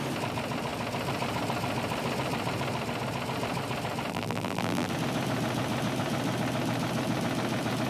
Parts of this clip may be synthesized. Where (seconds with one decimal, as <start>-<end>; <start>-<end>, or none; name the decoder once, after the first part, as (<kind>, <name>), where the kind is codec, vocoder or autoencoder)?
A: 4.1-4.9 (vocoder, BigVGAN v2)